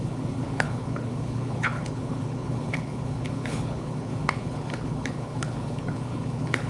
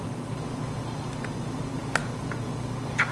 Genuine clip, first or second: second